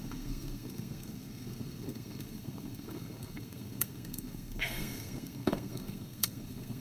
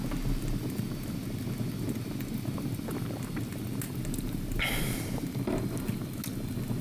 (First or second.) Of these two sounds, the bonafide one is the second